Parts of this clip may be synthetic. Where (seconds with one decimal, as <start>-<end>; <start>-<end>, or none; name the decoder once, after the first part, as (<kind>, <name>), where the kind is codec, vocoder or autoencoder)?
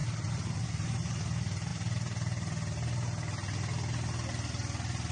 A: none